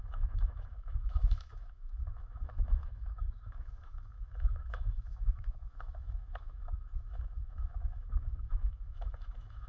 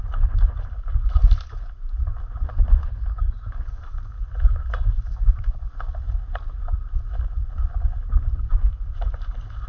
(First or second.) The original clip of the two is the second